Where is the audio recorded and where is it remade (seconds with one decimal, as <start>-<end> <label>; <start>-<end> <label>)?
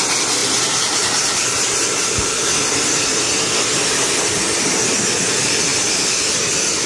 0.0-6.9 recorded